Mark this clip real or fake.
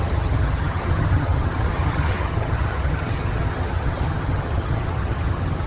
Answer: fake